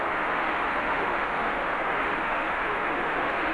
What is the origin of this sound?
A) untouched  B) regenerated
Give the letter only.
B